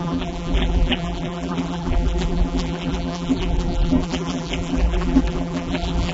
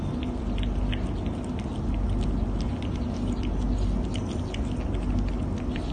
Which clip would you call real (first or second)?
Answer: second